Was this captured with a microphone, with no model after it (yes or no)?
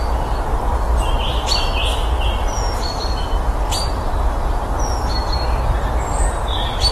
yes